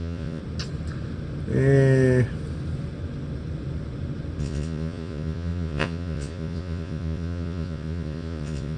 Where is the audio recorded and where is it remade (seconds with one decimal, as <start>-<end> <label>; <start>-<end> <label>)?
0.0-0.4 remade; 0.4-4.4 recorded; 4.4-8.8 remade